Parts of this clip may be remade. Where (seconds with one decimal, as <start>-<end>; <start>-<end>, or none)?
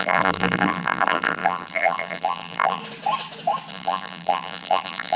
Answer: 0.0-2.8; 3.7-5.2